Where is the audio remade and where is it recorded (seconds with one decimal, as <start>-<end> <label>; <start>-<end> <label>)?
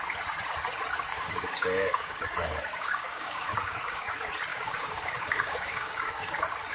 0.0-1.1 recorded; 1.1-4.1 remade; 4.1-4.5 recorded; 4.5-6.3 remade; 6.3-6.7 recorded